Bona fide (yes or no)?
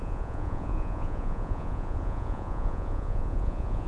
no